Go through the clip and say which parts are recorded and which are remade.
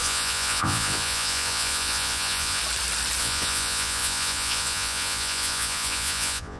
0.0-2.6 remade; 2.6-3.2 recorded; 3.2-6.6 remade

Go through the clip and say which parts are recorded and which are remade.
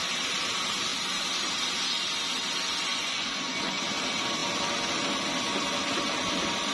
0.0-2.9 recorded; 2.9-3.8 remade; 3.8-6.7 recorded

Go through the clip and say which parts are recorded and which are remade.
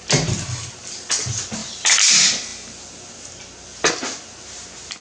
0.0-5.0 recorded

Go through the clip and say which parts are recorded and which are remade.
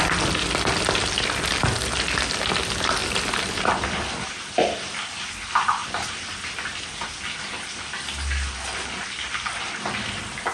0.0-10.5 recorded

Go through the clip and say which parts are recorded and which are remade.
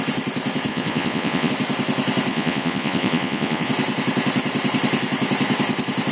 0.0-0.7 recorded; 0.7-1.5 remade; 1.5-2.3 recorded; 2.3-3.7 remade; 3.7-6.1 recorded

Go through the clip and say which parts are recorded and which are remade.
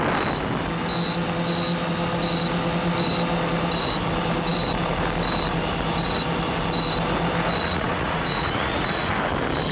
0.0-7.7 recorded; 7.7-9.1 remade; 9.1-9.7 recorded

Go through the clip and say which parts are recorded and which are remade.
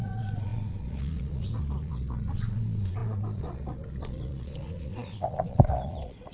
0.0-6.3 remade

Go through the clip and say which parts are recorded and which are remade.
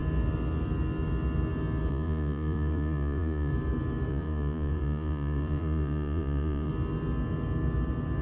0.0-1.9 recorded; 1.9-3.5 remade; 3.5-4.1 recorded; 4.1-6.7 remade; 6.7-8.2 recorded